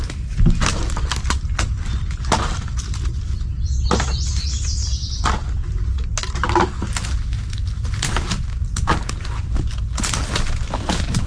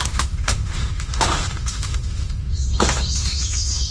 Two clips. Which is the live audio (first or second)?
first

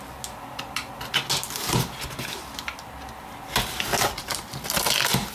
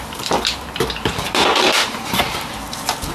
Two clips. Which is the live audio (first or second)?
first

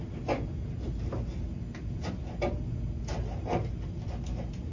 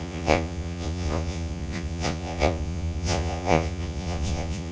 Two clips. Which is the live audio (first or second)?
first